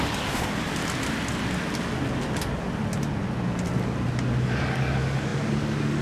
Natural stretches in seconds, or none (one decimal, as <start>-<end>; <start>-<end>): 0.8-4.4